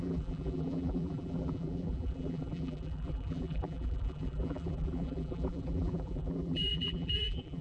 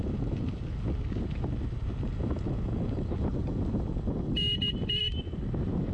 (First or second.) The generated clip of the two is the first